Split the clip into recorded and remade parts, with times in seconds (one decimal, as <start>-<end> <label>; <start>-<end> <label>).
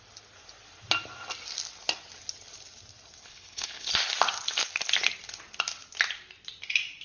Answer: 0.0-3.2 recorded; 3.2-3.9 remade; 3.9-7.0 recorded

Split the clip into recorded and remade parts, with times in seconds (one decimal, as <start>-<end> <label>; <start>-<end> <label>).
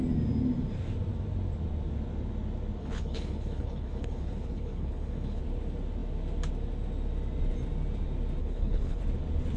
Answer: 0.0-2.8 recorded; 2.8-5.4 remade; 5.4-8.4 recorded; 8.4-9.0 remade; 9.0-9.6 recorded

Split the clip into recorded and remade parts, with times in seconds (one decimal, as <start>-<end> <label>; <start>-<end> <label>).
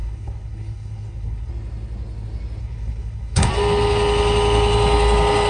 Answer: 0.0-1.5 remade; 1.5-2.6 recorded; 2.6-3.5 remade; 3.5-5.5 recorded